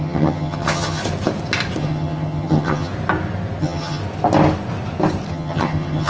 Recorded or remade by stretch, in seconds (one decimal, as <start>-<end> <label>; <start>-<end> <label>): 0.0-1.0 remade; 1.0-1.8 recorded; 1.8-2.9 remade; 2.9-3.6 recorded; 3.6-4.0 remade; 4.0-5.3 recorded; 5.3-6.1 remade